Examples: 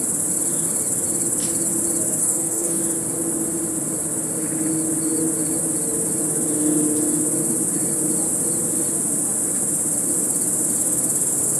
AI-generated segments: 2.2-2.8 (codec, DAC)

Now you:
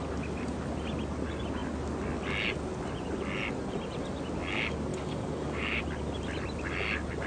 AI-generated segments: 4.9-5.8 (codec, DAC)

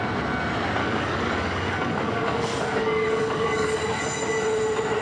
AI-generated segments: 0.8-3.8 (codec, DAC)

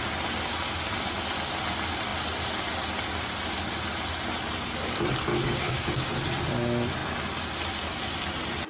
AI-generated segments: 5.3-6.2 (codec, DAC)

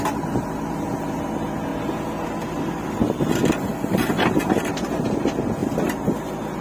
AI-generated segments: none

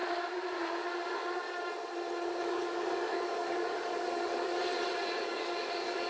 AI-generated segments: 2.4-4.6 (codec, DAC); 5.2-6.1

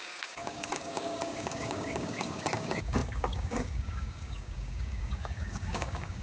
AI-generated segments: 0.0-6.2 (codec, DAC)

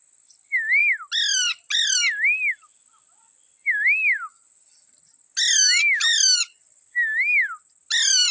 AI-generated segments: none